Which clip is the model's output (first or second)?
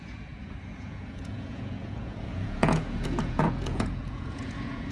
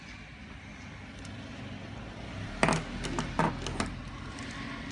first